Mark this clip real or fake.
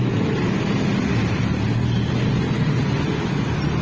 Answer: real